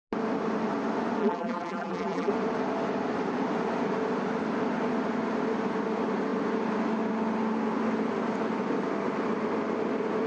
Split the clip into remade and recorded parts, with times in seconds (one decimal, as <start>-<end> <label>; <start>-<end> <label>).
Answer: 0.0-1.2 recorded; 1.2-2.3 remade; 2.3-10.3 recorded